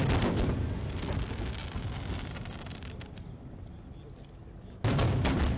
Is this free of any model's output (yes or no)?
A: yes